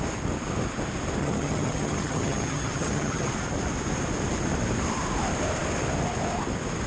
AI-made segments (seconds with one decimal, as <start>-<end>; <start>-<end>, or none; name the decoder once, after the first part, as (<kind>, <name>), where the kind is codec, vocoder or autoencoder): 1.2-3.3 (vocoder, HiFi-GAN)